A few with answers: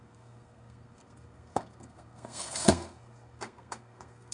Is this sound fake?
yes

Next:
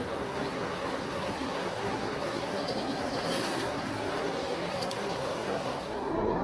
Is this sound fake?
yes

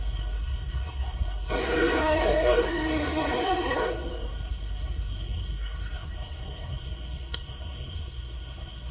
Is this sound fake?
yes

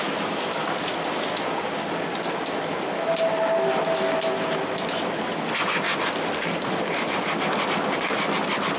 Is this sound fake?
no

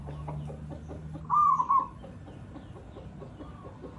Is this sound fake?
no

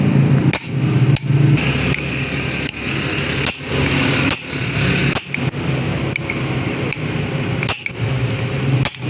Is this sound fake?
no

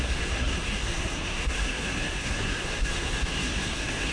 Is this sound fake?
yes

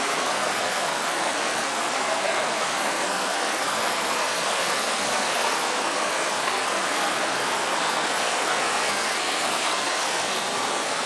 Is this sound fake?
yes